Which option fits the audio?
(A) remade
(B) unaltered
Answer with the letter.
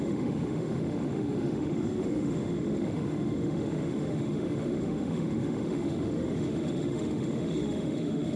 A